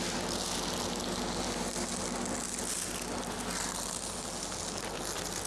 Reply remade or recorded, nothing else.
recorded